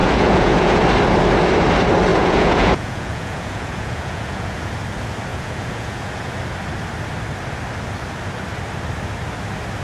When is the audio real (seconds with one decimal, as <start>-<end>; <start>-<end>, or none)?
0.8-2.1; 4.7-5.3; 6.4-9.8